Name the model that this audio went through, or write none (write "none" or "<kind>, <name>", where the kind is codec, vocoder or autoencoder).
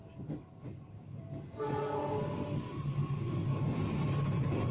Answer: none